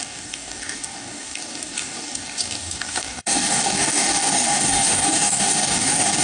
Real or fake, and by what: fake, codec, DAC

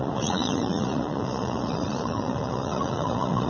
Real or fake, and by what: fake, vocoder, Vocos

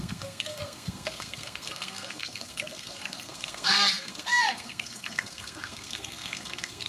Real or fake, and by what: fake, codec, SNAC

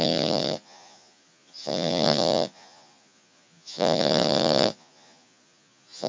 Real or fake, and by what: fake, vocoder, Vocos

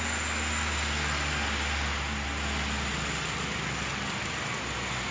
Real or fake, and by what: real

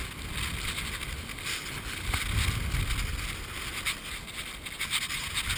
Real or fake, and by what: real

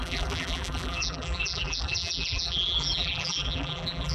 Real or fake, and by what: fake, vocoder, BigVGAN v2